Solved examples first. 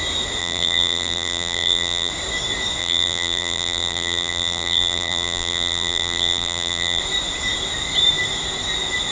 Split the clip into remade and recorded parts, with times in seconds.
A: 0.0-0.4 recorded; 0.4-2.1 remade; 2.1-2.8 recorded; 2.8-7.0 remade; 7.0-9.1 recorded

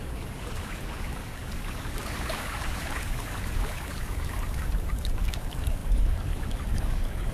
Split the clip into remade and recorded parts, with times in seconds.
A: 0.0-7.3 remade

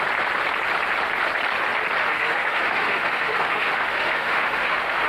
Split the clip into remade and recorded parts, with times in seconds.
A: 0.0-2.0 recorded; 2.0-5.1 remade

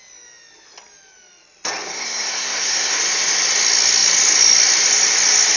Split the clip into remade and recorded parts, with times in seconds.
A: 0.0-1.9 recorded; 1.9-3.0 remade; 3.0-5.6 recorded